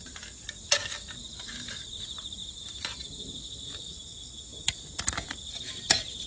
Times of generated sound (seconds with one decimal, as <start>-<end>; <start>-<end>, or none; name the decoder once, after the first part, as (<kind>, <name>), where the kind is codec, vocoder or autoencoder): none